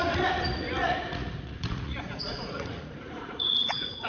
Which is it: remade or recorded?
remade